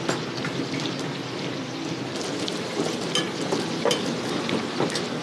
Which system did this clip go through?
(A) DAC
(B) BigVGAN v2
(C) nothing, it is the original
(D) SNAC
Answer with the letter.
C